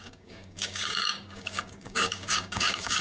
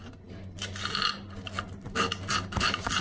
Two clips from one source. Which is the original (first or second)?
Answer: second